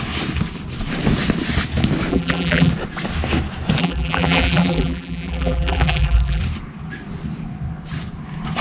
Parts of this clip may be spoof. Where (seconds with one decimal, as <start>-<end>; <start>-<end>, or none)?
2.1-2.7; 3.8-6.4